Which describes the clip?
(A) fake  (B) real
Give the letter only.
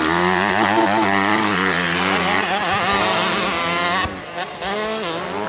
B